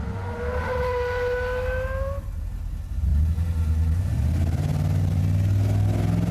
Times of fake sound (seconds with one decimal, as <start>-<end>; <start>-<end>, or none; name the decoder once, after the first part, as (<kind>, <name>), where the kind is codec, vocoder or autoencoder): 3.1-5.2 (vocoder, BigVGAN v2)